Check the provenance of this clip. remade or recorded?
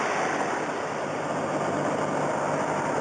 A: recorded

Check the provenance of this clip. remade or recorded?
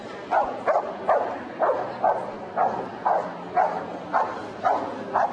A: recorded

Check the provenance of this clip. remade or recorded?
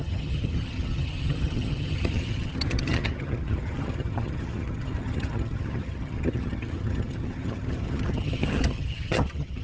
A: remade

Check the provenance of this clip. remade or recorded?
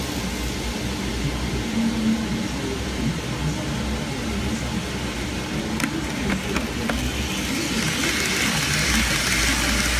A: recorded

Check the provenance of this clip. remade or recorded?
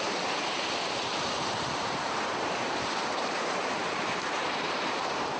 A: remade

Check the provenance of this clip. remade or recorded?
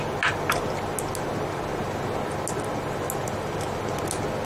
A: recorded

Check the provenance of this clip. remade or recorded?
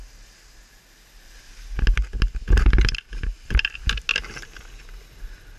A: recorded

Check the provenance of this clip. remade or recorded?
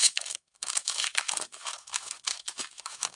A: remade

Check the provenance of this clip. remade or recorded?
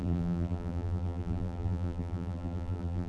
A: remade